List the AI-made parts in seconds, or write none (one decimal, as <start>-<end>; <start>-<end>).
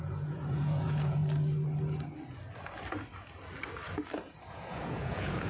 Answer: 0.0-1.2; 4.5-5.5